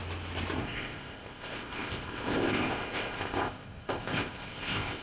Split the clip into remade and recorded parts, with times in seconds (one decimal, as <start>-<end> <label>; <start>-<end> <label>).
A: 0.0-0.6 recorded; 0.6-5.0 remade